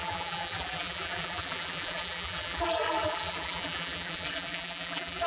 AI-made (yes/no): yes